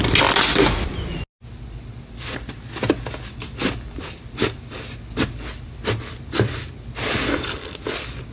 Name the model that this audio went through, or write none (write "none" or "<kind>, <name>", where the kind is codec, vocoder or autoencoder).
none